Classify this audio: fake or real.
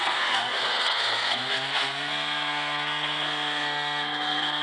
fake